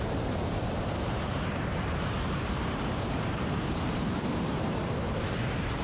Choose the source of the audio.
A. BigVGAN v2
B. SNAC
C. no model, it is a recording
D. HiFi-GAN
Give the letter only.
A